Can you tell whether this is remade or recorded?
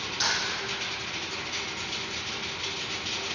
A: recorded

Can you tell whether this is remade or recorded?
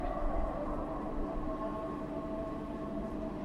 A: remade